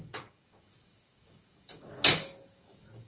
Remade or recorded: remade